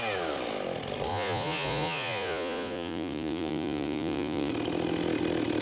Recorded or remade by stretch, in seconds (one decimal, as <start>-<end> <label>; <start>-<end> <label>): 0.0-1.1 recorded; 1.1-4.5 remade; 4.5-5.6 recorded